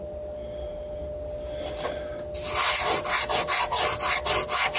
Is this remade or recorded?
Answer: recorded